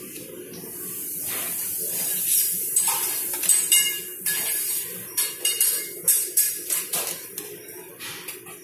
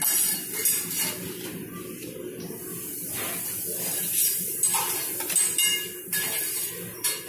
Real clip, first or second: second